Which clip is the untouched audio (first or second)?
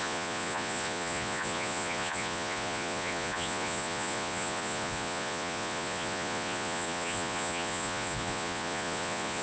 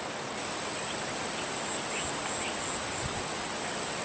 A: second